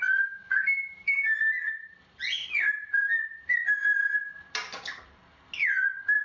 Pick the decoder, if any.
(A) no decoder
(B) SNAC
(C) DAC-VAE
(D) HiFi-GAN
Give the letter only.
A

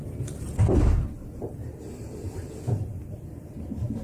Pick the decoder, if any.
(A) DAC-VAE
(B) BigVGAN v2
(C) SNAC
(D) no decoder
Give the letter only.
B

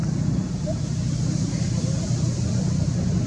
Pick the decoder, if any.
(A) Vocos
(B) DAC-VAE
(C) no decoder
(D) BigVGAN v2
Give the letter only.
C